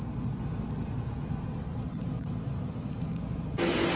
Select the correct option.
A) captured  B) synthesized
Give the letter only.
A